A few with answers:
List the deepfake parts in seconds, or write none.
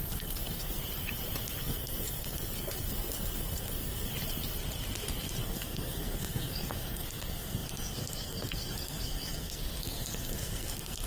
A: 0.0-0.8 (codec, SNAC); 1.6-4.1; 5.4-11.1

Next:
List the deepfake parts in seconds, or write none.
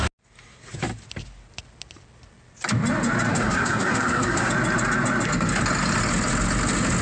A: 3.3-4.5 (codec, SNAC)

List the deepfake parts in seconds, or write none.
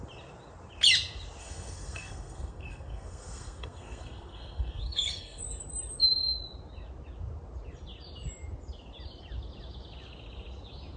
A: 1.4-5.4 (codec, SNAC)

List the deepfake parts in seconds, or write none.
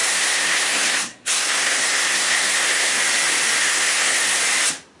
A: 0.0-3.0 (codec, SNAC); 3.6-4.4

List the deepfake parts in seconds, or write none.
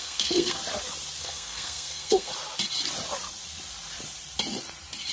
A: 0.0-0.6 (codec, SNAC); 1.2-2.3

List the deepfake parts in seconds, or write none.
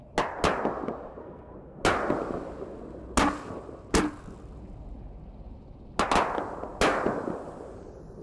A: 1.2-1.8 (codec, SNAC)